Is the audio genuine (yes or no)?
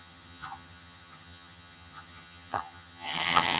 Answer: no